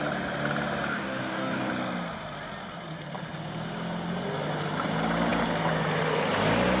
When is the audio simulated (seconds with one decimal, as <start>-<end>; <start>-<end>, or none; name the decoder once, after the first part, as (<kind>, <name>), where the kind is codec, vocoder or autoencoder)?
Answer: 0.9-1.7 (codec, DAC)